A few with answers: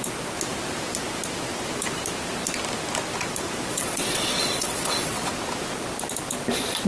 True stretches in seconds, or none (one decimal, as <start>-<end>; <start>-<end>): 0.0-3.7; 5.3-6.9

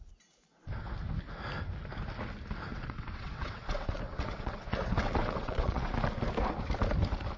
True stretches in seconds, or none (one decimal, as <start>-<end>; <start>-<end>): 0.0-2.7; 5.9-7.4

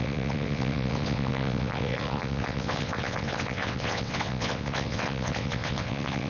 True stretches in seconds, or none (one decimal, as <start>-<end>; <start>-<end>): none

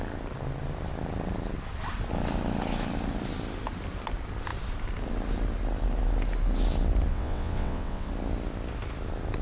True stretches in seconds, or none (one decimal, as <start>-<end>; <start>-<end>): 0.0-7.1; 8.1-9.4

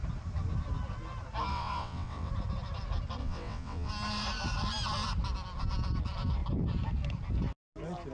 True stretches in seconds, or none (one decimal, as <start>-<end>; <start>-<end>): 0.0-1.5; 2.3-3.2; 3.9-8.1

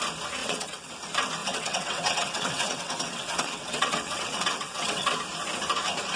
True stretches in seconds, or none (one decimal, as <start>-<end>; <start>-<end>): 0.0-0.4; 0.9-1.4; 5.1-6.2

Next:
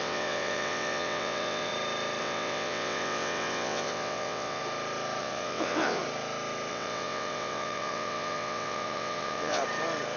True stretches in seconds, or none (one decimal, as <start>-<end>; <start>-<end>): 1.7-2.2; 4.6-5.2; 6.0-6.7; 9.6-10.2